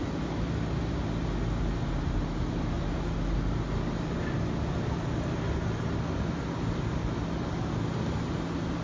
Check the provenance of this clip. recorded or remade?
recorded